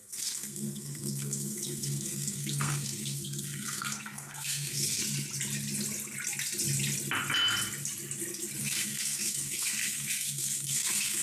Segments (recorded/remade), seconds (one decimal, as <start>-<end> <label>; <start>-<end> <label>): 0.0-5.0 remade; 5.0-8.6 recorded; 8.6-11.2 remade